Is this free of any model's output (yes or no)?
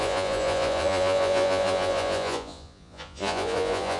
no